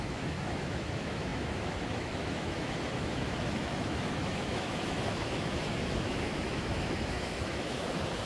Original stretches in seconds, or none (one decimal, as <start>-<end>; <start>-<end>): none